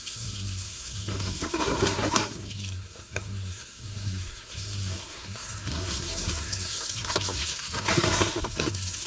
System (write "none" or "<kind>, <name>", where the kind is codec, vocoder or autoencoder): codec, SNAC